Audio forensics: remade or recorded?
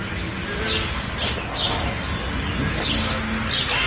recorded